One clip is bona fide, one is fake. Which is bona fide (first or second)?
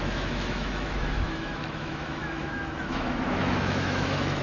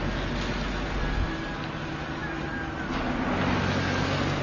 second